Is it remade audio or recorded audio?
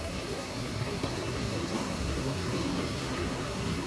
remade